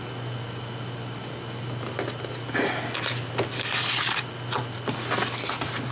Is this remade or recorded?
recorded